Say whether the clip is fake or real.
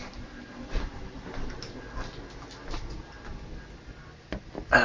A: real